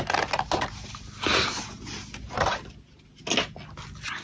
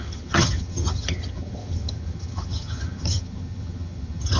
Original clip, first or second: first